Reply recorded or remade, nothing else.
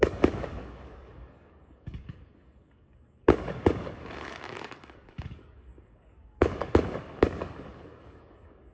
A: remade